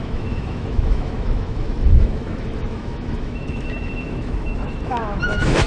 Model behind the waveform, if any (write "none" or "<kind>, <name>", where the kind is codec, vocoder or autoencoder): autoencoder, DAC-VAE